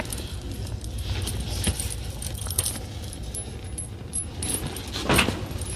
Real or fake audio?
real